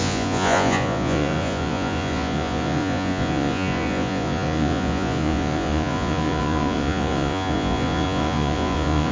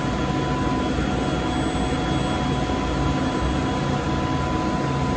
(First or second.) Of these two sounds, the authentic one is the second